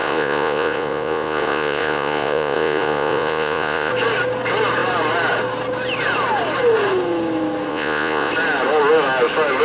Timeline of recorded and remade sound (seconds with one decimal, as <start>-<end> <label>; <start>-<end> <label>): 0.0-3.9 remade; 3.9-7.7 recorded; 7.7-8.3 remade; 8.3-9.6 recorded